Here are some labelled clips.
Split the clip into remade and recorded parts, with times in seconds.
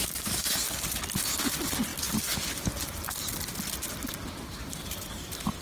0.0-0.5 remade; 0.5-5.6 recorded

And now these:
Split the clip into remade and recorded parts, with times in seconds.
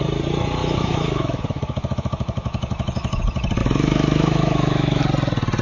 0.0-0.6 recorded; 0.6-3.2 remade; 3.2-3.6 recorded; 3.6-5.0 remade; 5.0-5.6 recorded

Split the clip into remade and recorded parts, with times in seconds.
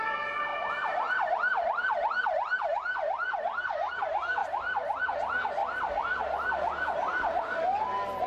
0.0-8.3 recorded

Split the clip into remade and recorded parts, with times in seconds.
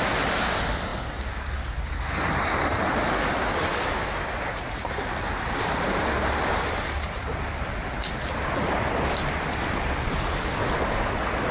0.0-11.5 recorded